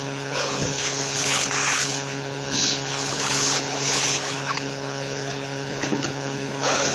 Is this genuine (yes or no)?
no